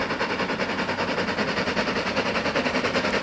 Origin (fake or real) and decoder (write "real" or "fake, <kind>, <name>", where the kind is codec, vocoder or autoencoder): real